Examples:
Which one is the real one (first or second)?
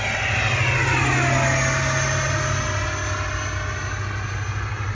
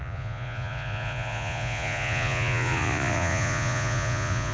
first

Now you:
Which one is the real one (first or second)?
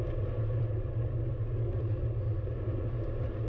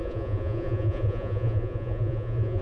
first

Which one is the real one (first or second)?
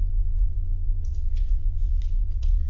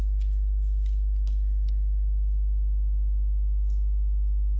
second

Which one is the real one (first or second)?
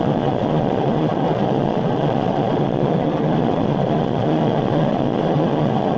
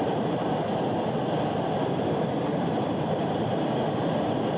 second